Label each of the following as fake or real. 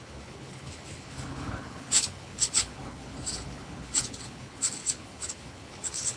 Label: fake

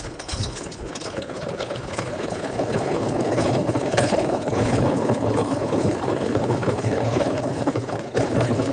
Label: fake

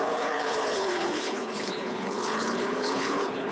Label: fake